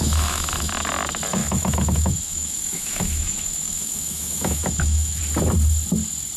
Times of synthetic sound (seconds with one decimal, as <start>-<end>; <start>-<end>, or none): 0.0-0.7; 1.4-5.2